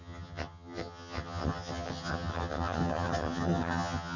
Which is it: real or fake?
fake